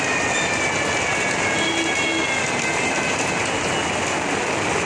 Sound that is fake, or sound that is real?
real